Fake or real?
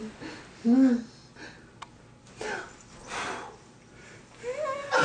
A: real